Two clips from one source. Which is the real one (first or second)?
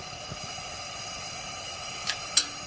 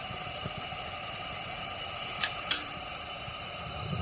first